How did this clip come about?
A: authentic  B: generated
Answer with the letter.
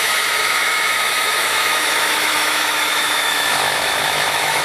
B